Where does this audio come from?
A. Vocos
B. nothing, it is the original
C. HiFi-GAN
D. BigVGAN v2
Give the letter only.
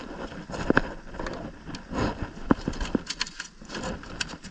B